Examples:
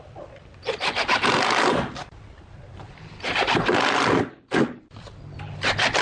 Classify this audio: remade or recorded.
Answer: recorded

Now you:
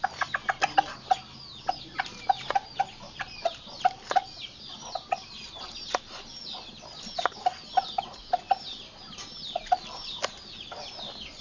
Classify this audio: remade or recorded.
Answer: recorded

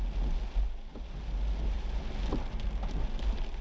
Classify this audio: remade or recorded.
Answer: recorded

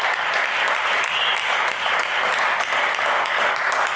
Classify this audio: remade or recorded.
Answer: recorded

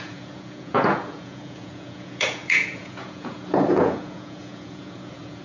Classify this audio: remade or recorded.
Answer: remade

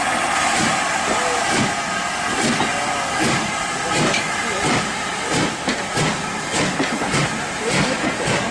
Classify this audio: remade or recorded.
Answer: recorded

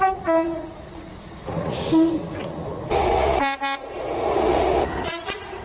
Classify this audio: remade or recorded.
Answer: remade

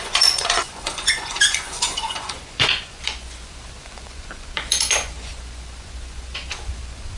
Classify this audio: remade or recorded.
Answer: remade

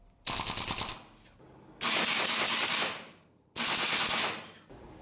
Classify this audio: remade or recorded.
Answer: recorded